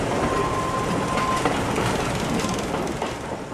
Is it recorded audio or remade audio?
recorded